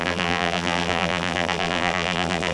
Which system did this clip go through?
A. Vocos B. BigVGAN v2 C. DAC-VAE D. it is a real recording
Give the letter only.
B